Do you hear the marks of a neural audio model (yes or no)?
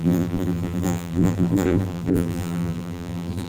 yes